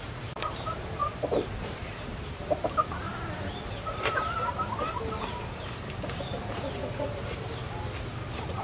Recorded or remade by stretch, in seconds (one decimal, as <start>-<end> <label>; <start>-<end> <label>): 0.0-3.1 remade; 3.1-6.6 recorded; 6.6-7.6 remade; 7.6-8.6 recorded